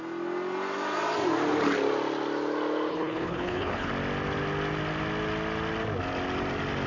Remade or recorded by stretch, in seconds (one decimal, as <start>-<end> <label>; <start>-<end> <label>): 0.0-2.9 recorded; 2.9-3.9 remade; 3.9-6.9 recorded